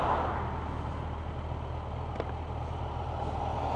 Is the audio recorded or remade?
recorded